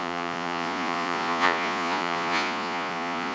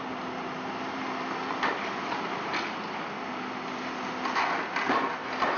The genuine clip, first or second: second